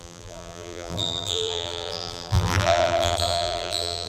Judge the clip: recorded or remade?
remade